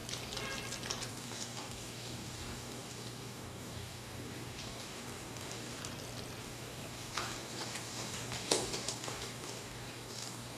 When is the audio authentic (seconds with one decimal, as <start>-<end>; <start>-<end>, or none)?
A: 0.0-1.1; 5.8-6.4